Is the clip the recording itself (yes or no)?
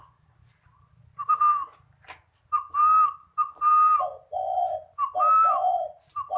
yes